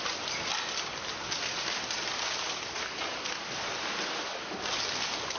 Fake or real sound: real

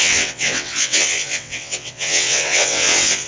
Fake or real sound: fake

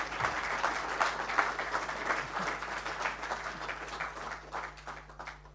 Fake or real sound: real